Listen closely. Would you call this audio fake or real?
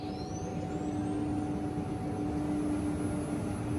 real